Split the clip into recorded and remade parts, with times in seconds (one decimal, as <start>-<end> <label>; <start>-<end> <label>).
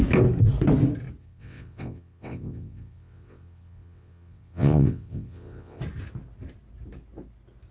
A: 0.0-1.2 recorded; 1.2-5.8 remade; 5.8-7.7 recorded